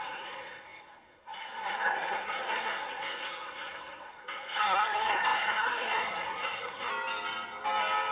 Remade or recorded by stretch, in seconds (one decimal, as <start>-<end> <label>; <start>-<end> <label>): 0.0-6.9 remade; 6.9-8.1 recorded